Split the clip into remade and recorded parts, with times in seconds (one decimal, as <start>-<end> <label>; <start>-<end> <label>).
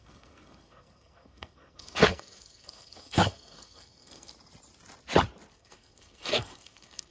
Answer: 0.0-4.3 remade; 4.3-5.5 recorded; 5.5-7.1 remade